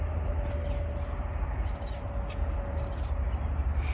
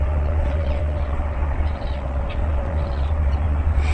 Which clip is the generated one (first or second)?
second